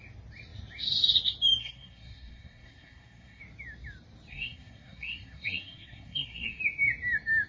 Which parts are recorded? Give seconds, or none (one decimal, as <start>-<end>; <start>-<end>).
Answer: 0.0-1.6; 3.4-4.3; 6.6-7.5